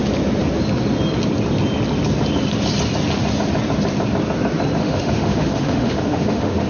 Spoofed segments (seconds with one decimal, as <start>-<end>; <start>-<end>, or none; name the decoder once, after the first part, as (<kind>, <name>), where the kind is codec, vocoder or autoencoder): 4.8-6.7 (autoencoder, DAC-VAE)